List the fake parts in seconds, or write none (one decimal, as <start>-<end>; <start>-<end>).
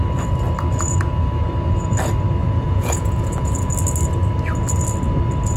2.4-3.7